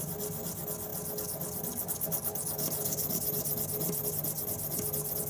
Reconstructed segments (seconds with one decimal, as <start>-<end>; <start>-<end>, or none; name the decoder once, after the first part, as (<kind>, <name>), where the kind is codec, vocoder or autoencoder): none